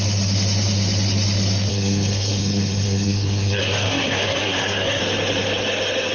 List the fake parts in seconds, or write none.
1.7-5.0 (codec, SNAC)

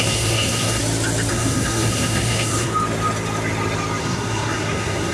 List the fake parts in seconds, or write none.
0.0-0.8 (codec, SNAC); 1.3-2.7; 4.0-5.1

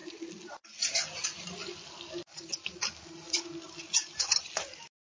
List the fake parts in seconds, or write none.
0.0-0.6 (vocoder, BigVGAN v2)

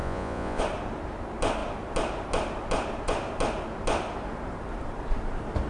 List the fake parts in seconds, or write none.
0.0-0.6 (vocoder, Vocos)

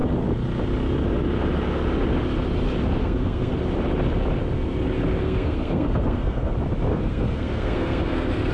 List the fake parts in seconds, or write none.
3.0-3.5 (codec, SNAC); 5.2-6.5; 6.9-8.5

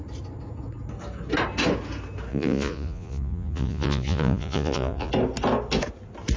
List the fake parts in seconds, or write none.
2.3-5.1 (vocoder, Vocos)

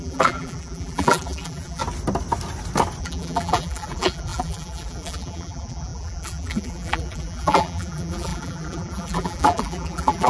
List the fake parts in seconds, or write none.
0.0-1.8 (vocoder, BigVGAN v2); 3.0-10.3

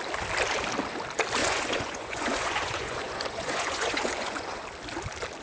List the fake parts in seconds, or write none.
1.4-4.6 (vocoder, Vocos)